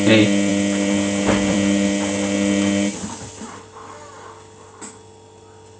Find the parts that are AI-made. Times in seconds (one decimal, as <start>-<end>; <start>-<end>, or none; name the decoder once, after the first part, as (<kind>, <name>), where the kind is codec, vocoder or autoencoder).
0.5-4.0 (vocoder, BigVGAN v2)